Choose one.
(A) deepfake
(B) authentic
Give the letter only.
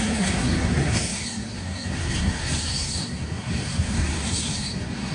A